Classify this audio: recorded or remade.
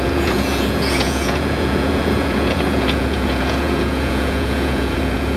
remade